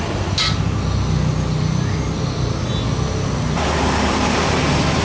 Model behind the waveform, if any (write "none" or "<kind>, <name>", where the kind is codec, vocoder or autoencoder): none